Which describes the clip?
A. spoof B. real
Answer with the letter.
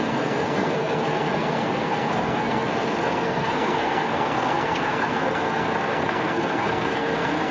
A